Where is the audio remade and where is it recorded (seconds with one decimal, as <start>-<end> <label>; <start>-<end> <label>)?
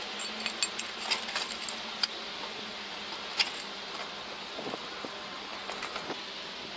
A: 0.0-6.8 recorded